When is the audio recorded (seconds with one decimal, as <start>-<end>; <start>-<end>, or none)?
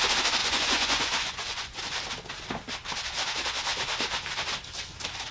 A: 0.0-0.4; 1.8-5.3